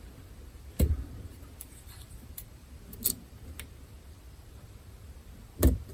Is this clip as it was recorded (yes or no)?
no